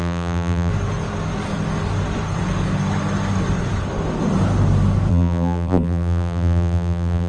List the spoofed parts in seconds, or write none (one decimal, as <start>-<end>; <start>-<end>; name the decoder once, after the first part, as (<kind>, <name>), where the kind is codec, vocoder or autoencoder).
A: 0.0-0.7 (vocoder, BigVGAN v2); 5.1-7.3